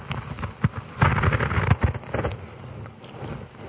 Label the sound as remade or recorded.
recorded